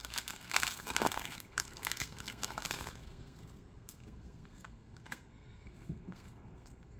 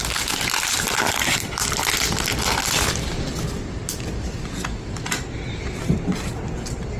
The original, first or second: second